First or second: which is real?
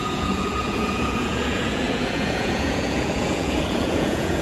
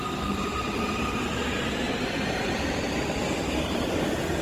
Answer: second